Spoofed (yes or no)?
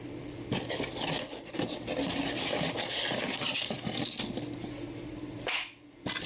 no